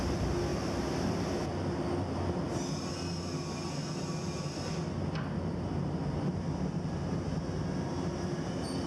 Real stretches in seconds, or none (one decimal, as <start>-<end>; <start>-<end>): 0.0-8.9

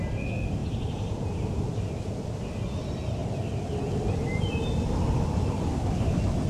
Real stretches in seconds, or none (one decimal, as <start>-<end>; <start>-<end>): 0.0-0.6; 2.4-6.5

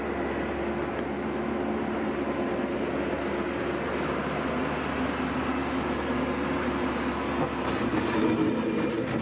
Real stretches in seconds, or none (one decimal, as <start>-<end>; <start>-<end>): 0.0-9.2

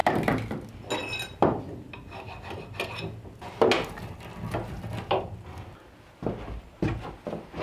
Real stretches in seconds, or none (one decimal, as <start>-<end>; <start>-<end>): 0.0-7.6

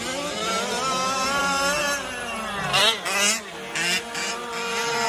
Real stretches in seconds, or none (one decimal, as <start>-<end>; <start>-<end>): 0.0-5.1

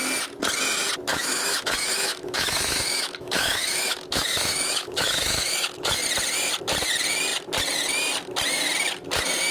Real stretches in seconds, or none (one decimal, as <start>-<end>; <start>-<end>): 0.0-1.1; 6.0-9.5

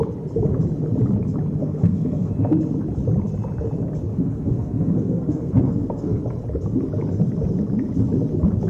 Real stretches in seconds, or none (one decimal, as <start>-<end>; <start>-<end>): 0.0-1.6; 2.3-4.1; 6.2-8.7

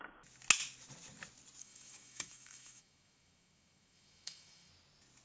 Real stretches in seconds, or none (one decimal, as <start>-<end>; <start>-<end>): 0.0-1.6; 4.7-5.2